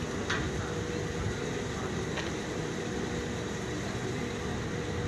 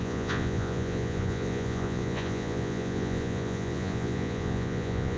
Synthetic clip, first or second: second